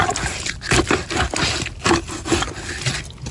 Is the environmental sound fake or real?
real